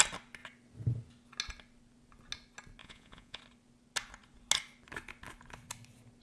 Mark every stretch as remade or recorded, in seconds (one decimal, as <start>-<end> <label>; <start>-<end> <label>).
0.0-2.8 recorded; 2.8-3.4 remade; 3.4-6.2 recorded